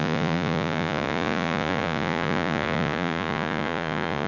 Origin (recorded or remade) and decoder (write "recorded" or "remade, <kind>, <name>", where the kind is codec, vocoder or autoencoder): remade, vocoder, Vocos